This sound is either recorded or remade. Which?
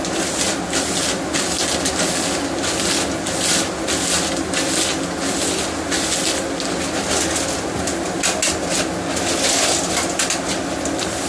recorded